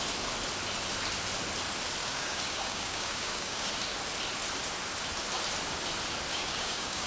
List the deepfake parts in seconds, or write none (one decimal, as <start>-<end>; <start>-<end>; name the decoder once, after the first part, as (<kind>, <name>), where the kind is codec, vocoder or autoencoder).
2.0-3.7 (codec, DAC); 6.3-7.1